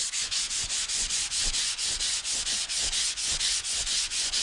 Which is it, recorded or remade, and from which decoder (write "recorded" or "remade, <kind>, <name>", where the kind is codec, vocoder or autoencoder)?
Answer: remade, vocoder, Vocos